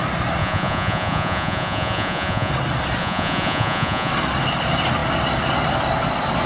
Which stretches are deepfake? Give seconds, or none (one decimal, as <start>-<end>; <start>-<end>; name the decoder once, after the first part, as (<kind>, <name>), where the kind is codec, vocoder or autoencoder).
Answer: 0.4-2.5 (vocoder, Vocos); 3.0-4.1